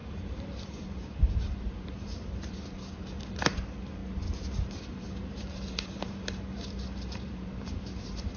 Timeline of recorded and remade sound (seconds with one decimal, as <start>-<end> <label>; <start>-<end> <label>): 0.0-4.0 remade; 4.0-4.7 recorded; 4.7-8.4 remade